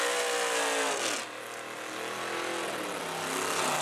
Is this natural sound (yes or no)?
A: yes